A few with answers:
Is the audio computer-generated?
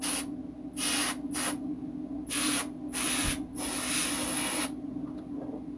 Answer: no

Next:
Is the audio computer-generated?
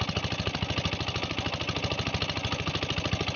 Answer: no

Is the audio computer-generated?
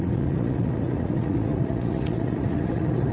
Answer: yes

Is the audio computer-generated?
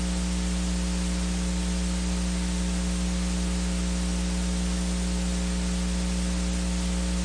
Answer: no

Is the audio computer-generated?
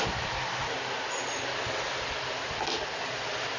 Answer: no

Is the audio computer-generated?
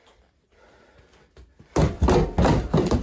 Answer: no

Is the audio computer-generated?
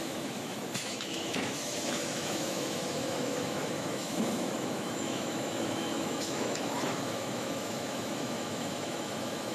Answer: yes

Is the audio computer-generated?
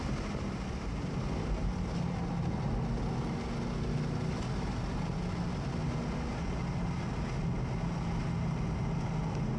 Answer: no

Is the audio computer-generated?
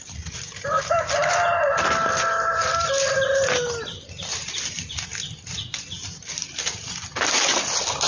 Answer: no